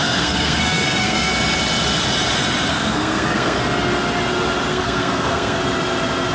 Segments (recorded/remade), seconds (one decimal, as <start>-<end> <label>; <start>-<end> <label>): 0.0-1.3 remade; 1.3-2.7 recorded; 2.7-3.6 remade; 3.6-4.7 recorded; 4.7-5.6 remade; 5.6-6.3 recorded